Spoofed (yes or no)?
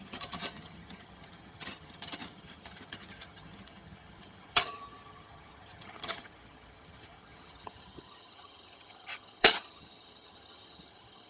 yes